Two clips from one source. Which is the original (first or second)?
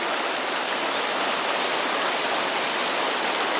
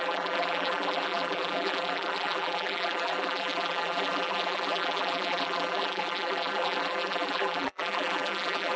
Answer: first